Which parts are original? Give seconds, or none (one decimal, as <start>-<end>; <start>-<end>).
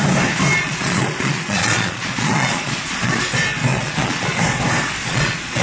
0.0-0.6; 3.2-3.7; 4.4-5.0